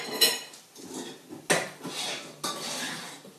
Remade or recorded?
recorded